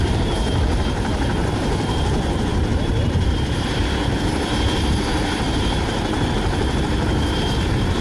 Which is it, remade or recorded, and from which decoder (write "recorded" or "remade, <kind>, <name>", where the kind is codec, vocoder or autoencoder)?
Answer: remade, vocoder, BigVGAN v2